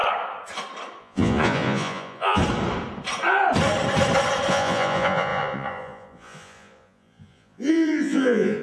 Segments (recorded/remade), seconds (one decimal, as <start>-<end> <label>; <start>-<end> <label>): 0.0-1.0 recorded; 1.0-2.4 remade; 2.4-4.5 recorded; 4.5-8.6 remade